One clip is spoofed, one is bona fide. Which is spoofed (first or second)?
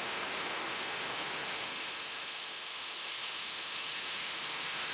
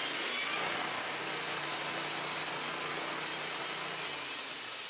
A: first